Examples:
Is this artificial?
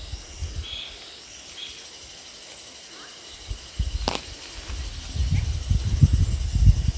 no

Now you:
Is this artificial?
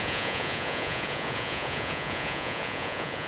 yes